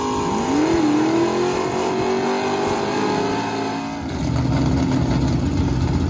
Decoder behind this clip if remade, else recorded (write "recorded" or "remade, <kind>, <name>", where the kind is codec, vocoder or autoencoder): recorded